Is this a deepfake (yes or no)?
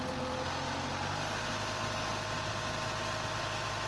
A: no